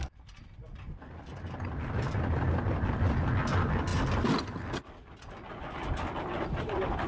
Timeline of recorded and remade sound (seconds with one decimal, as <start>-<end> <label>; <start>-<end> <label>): 0.0-7.1 recorded